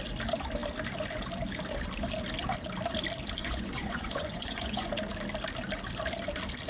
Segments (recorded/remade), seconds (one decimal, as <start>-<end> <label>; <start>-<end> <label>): 0.0-3.4 recorded; 3.4-4.9 remade; 4.9-6.7 recorded